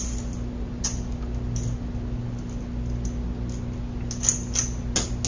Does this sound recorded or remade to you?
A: recorded